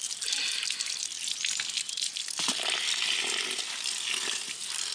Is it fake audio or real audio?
real